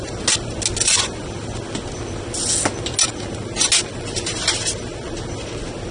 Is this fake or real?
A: real